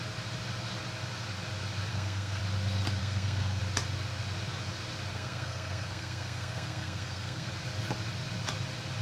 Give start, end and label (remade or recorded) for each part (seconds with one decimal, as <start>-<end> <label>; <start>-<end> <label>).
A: 0.0-1.9 recorded; 1.9-2.4 remade; 2.4-3.0 recorded; 3.0-3.6 remade; 3.6-5.1 recorded; 5.1-7.5 remade; 7.5-9.0 recorded